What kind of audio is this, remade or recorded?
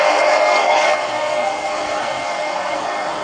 remade